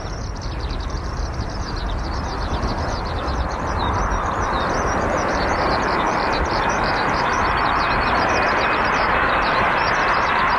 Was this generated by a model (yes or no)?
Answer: yes